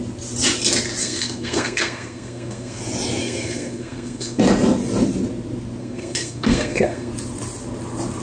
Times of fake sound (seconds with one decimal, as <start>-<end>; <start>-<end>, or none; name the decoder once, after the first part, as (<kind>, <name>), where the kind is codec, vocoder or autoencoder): 1.0-2.8 (codec, SNAC); 3.2-4.4; 5.8-7.1